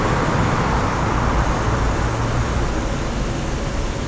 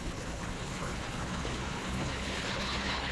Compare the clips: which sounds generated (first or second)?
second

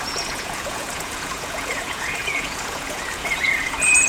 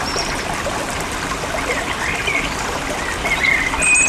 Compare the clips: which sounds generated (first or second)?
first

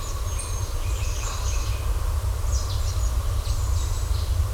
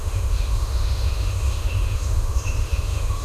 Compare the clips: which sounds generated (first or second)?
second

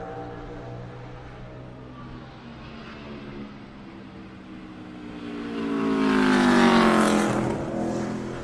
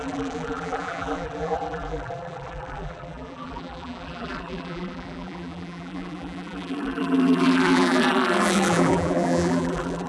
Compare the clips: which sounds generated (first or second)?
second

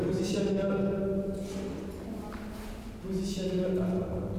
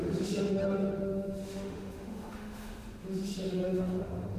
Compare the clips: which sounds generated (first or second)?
second